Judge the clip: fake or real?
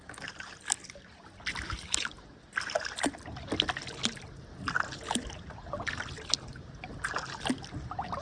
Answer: real